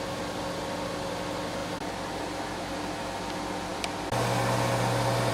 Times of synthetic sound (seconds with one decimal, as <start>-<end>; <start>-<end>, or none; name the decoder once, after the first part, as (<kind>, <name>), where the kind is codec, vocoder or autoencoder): none